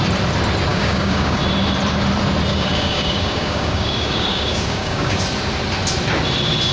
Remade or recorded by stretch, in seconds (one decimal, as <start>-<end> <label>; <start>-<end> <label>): 0.0-0.7 recorded; 0.7-1.4 remade; 1.4-2.5 recorded; 2.5-5.2 remade; 5.2-6.7 recorded